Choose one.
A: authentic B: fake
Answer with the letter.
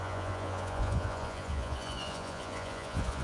B